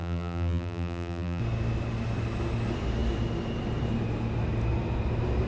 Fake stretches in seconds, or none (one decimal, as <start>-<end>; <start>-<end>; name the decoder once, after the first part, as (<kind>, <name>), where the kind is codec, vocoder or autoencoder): 0.0-1.4 (vocoder, BigVGAN v2)